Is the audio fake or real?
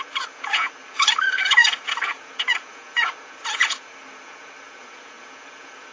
fake